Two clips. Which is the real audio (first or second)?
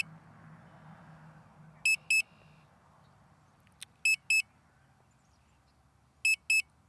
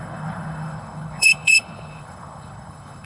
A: first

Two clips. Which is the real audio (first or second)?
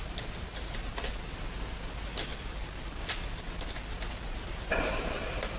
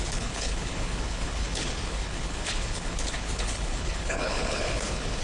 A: first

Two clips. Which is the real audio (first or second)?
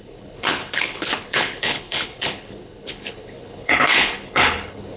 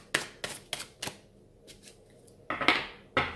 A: second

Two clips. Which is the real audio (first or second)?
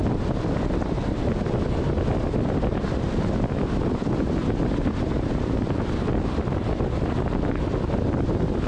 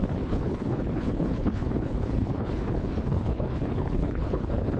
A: first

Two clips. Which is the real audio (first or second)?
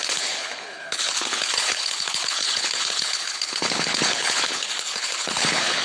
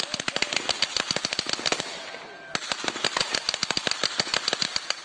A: second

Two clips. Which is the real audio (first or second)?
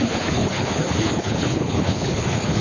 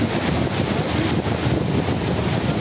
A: second